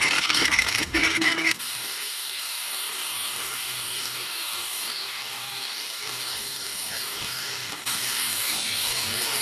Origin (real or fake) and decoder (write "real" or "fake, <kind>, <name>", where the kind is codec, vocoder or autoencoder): fake, codec, DAC